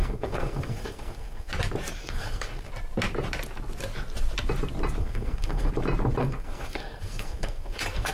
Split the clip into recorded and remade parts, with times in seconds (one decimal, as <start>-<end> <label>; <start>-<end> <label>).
0.0-1.5 remade; 1.5-2.0 recorded; 2.0-2.7 remade; 2.7-5.0 recorded; 5.0-5.7 remade; 5.7-6.2 recorded; 6.2-8.1 remade